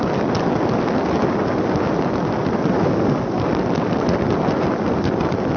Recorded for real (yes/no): yes